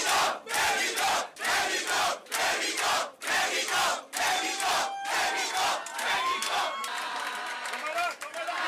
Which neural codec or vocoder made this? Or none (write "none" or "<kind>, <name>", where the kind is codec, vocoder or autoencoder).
none